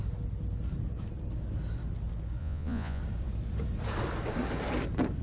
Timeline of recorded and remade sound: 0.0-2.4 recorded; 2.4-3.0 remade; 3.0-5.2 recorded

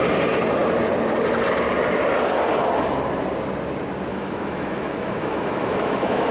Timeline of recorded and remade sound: 0.0-4.1 recorded; 4.1-6.3 remade

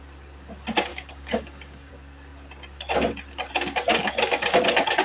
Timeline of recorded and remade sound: 0.0-0.9 recorded; 0.9-1.9 remade; 1.9-3.9 recorded; 3.9-4.6 remade; 4.6-5.0 recorded

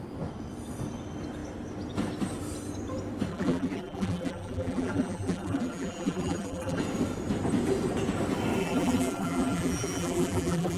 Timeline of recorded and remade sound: 0.0-3.3 recorded; 3.3-6.8 remade; 6.8-8.6 recorded; 8.6-10.8 remade